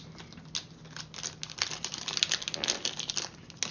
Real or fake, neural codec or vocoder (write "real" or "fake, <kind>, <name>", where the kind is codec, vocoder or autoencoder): real